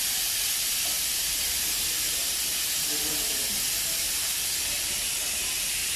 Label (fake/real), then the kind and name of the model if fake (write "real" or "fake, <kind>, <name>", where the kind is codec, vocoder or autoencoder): real